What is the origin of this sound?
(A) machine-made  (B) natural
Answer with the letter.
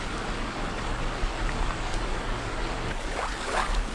A